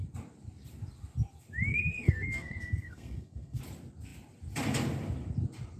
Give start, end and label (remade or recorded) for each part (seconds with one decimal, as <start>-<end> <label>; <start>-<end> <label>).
0.0-1.7 recorded; 1.7-3.6 remade; 3.6-5.8 recorded